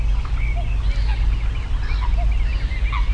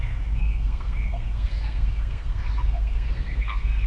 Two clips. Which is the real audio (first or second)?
first